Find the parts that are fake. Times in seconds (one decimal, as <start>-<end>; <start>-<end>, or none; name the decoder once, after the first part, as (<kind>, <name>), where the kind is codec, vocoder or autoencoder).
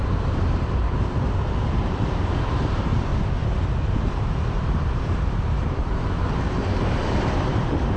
0.0-3.1 (vocoder, BigVGAN v2); 4.2-8.0